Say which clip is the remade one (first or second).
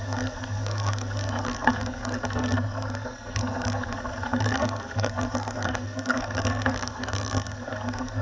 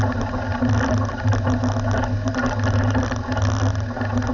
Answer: first